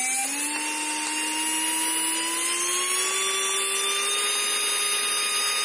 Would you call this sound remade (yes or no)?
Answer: no